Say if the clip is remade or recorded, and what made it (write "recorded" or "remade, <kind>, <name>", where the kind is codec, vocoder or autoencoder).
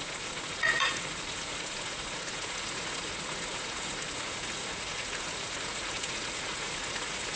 remade, vocoder, Vocos